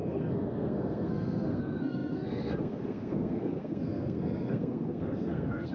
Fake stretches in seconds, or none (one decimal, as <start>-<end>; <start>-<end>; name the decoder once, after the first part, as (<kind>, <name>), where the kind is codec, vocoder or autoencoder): 0.0-5.7 (codec, SNAC)